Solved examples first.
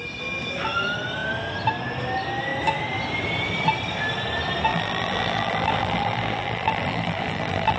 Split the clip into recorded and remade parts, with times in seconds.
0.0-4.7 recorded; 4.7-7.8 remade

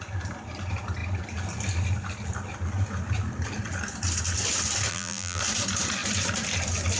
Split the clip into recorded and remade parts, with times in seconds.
0.0-4.9 recorded; 4.9-5.4 remade; 5.4-7.0 recorded